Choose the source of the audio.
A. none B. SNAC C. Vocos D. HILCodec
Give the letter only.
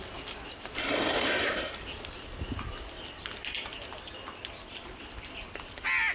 A